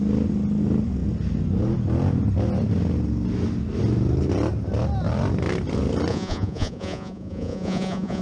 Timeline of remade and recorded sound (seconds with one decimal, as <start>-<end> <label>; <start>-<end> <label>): 0.0-6.1 recorded; 6.1-8.2 remade